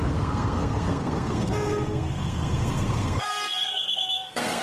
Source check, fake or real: fake